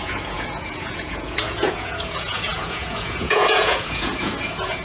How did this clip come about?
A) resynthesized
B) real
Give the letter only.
A